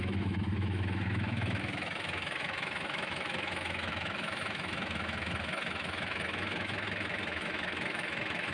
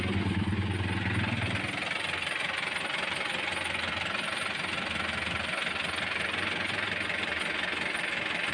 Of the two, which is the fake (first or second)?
first